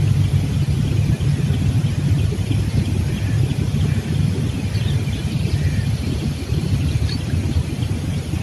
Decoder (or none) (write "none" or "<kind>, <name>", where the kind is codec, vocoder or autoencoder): none